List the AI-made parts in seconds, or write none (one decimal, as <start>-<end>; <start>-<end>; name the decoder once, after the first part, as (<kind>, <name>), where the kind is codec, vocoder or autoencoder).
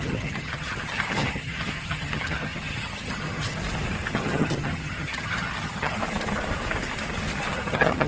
0.0-3.6 (vocoder, HiFi-GAN); 4.1-6.0; 7.5-8.1